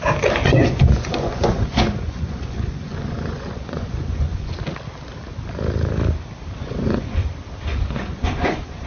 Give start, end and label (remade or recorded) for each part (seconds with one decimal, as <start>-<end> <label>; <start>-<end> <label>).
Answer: 0.0-0.4 recorded; 0.4-4.5 remade; 4.5-6.6 recorded; 6.6-7.3 remade; 7.3-7.7 recorded; 7.7-8.9 remade